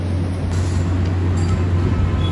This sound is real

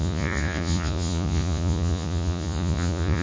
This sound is fake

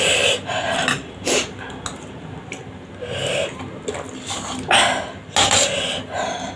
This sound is real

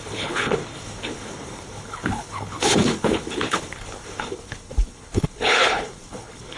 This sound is fake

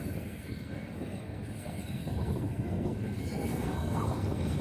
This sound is fake